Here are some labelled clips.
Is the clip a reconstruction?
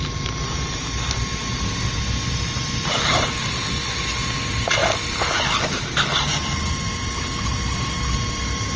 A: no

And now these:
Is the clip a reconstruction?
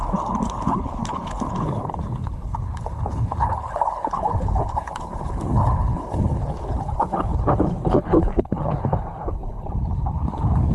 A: yes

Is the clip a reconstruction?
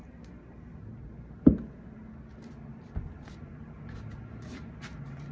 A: no